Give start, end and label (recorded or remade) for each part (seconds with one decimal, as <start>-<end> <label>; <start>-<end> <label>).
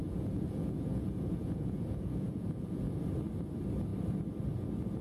0.0-3.0 remade; 3.0-5.0 recorded